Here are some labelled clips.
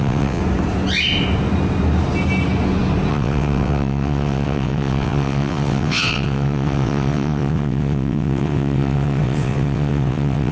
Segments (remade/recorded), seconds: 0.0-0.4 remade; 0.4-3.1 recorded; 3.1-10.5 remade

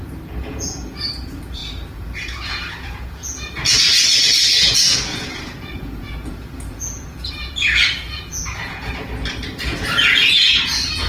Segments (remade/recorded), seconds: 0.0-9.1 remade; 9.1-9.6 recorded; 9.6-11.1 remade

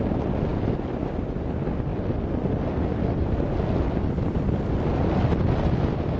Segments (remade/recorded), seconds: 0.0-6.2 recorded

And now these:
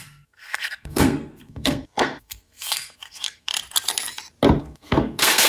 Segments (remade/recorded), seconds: 0.0-3.5 remade; 3.5-4.6 recorded; 4.6-5.5 remade